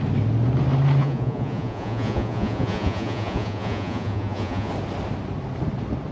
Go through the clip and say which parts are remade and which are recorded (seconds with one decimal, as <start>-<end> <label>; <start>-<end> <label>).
0.0-1.0 recorded; 1.0-4.7 remade; 4.7-6.1 recorded